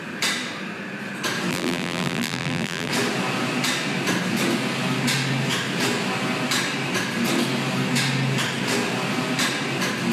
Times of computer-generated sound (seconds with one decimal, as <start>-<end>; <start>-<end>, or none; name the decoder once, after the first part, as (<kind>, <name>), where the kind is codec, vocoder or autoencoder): 1.5-2.9 (vocoder, BigVGAN v2)